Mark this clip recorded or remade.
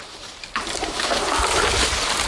recorded